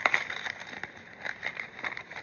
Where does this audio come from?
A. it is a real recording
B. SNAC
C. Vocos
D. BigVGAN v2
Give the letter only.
D